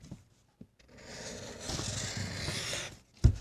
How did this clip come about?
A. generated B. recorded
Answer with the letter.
B